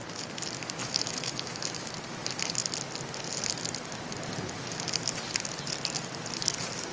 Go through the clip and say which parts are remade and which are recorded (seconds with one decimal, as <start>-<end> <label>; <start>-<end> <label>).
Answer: 0.0-0.8 recorded; 0.8-1.9 remade; 1.9-6.9 recorded